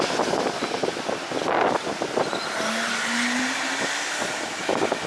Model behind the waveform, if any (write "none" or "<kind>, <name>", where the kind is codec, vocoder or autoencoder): none